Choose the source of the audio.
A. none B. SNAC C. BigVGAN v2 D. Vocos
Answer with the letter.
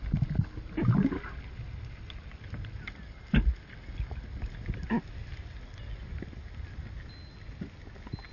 A